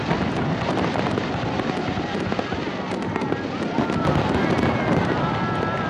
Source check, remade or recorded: recorded